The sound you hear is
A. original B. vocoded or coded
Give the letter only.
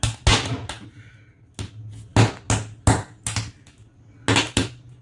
A